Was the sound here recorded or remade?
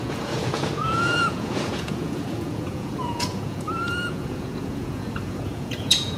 remade